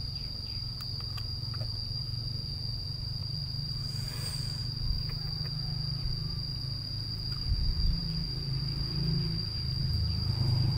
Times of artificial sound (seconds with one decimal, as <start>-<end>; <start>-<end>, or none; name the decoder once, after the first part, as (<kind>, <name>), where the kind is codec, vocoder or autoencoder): 3.2-3.8 (vocoder, BigVGAN v2)